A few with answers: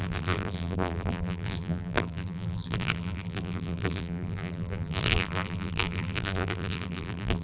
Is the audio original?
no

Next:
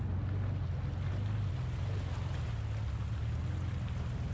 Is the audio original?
yes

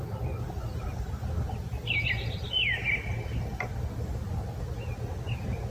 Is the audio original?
yes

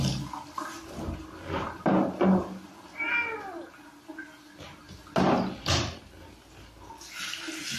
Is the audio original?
yes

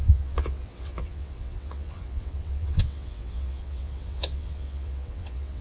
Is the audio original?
no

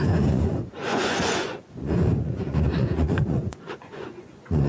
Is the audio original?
no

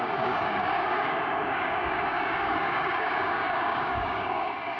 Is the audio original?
no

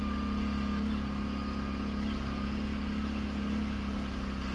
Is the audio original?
yes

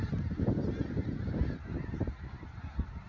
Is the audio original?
yes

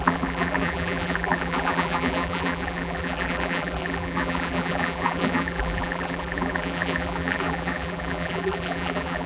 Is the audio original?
no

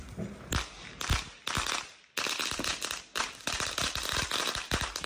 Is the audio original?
yes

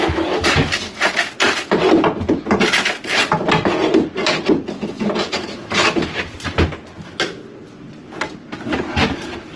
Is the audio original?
yes